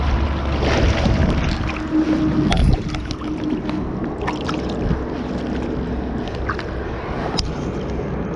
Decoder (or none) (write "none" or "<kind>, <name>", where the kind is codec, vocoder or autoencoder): none